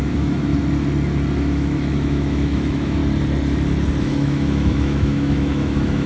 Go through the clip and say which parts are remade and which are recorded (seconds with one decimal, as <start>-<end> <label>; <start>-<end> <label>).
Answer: 0.0-0.5 remade; 0.5-1.4 recorded; 1.4-3.0 remade; 3.0-4.0 recorded; 4.0-6.1 remade